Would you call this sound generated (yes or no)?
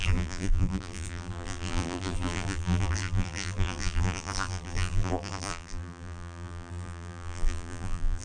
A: yes